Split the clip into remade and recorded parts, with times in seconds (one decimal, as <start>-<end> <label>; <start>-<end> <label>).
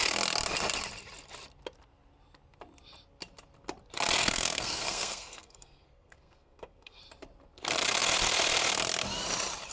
0.0-4.2 recorded; 4.2-7.0 remade; 7.0-9.7 recorded